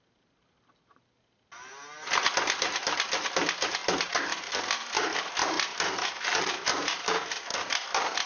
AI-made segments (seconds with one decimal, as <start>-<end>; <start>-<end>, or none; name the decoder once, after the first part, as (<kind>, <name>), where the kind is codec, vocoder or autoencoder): none